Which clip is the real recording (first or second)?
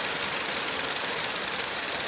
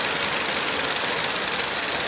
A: second